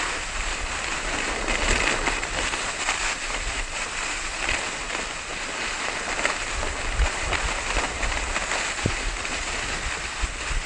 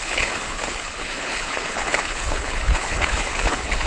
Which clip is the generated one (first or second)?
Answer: second